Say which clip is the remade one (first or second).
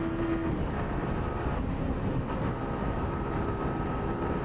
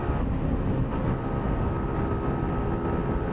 first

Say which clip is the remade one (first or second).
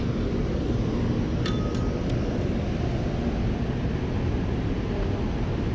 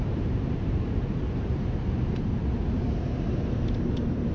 second